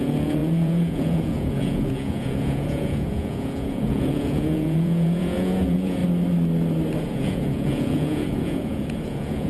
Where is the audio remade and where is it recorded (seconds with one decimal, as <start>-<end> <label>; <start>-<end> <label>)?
0.0-6.0 remade; 6.0-7.0 recorded; 7.0-9.5 remade